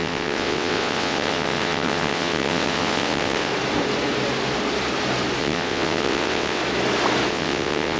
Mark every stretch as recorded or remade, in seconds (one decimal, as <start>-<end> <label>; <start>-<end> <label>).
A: 0.0-3.5 remade; 3.5-5.4 recorded; 5.4-6.6 remade; 6.6-7.3 recorded; 7.3-8.0 remade